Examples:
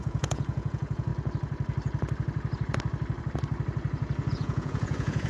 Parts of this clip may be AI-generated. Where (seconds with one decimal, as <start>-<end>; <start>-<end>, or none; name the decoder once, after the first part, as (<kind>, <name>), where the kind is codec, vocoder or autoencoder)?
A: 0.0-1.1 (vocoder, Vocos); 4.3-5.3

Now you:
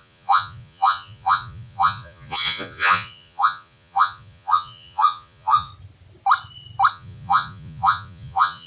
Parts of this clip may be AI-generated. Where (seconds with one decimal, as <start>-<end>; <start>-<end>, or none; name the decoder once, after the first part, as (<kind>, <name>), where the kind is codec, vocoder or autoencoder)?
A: 0.0-5.7 (vocoder, Vocos); 6.9-8.7

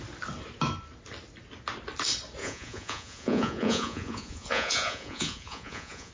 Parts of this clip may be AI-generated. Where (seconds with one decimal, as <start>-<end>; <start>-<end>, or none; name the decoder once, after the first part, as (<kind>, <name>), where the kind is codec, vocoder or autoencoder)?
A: 2.4-6.1 (vocoder, Vocos)